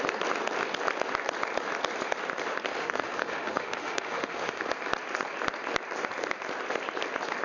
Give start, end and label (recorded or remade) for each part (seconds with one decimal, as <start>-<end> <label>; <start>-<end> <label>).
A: 0.0-2.7 recorded; 2.7-4.7 remade; 4.7-7.4 recorded